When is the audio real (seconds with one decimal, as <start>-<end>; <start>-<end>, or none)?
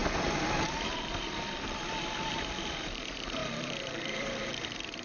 none